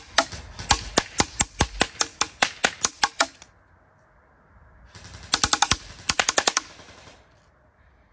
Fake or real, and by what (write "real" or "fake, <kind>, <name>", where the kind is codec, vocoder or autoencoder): real